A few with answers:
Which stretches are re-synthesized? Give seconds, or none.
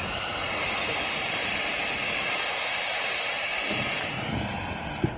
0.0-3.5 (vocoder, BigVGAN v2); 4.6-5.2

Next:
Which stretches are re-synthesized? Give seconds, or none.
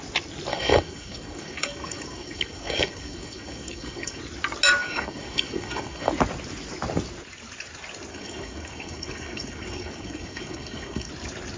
0.5-4.2 (codec, DAC); 4.8-6.1; 8.1-11.1